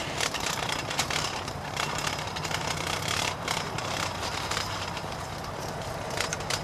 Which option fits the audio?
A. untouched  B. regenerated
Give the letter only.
B